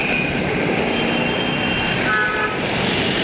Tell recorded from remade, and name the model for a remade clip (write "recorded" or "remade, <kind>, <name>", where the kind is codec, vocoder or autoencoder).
recorded